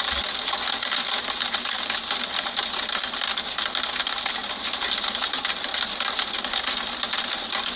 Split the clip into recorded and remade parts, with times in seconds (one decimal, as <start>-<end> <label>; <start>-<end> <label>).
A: 0.0-7.8 recorded

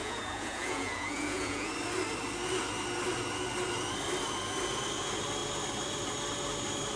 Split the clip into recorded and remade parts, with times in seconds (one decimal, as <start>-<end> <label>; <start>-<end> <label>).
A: 0.0-1.7 remade; 1.7-7.0 recorded

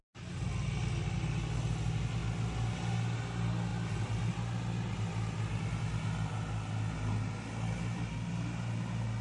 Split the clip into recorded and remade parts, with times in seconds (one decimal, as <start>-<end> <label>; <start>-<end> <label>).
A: 0.0-9.2 recorded

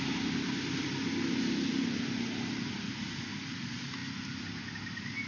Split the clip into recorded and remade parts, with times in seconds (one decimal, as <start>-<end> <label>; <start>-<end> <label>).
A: 0.0-5.3 recorded

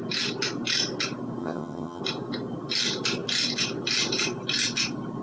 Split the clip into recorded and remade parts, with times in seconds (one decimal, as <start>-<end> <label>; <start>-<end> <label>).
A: 0.0-1.4 recorded; 1.4-2.0 remade; 2.0-5.2 recorded

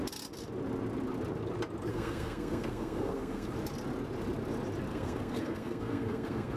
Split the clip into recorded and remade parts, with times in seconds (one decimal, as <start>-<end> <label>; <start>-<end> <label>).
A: 0.0-1.9 recorded; 1.9-3.5 remade; 3.5-4.9 recorded; 4.9-6.6 remade

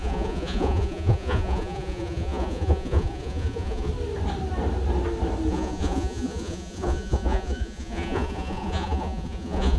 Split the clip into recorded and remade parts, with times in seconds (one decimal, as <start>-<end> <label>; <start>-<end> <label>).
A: 0.0-3.9 remade; 3.9-5.5 recorded; 5.5-9.8 remade

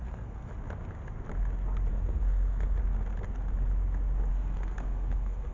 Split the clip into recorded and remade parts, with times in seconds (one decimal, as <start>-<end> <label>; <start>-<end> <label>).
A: 0.0-0.5 remade; 0.5-1.9 recorded; 1.9-2.8 remade; 2.8-4.3 recorded; 4.3-5.5 remade